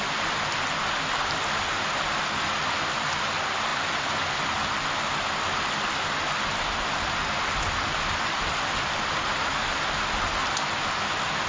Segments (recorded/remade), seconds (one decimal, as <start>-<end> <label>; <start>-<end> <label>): 0.0-11.5 recorded